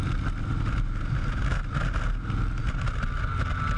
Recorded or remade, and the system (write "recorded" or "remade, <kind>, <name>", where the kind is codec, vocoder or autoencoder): recorded